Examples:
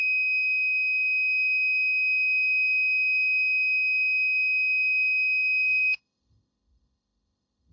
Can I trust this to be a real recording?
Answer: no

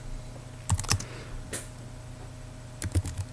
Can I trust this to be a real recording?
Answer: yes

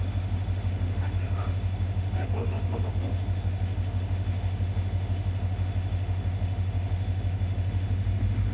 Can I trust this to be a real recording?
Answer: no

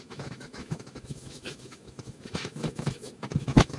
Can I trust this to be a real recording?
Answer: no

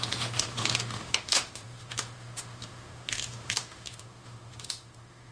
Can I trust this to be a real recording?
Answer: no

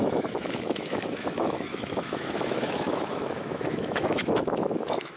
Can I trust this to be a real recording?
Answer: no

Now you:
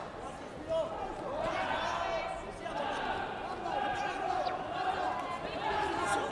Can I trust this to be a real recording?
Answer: yes